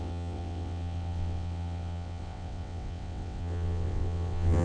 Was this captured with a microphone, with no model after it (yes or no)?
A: no